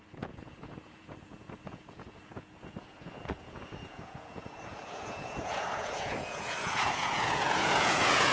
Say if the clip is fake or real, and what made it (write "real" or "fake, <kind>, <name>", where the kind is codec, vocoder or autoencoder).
fake, vocoder, Vocos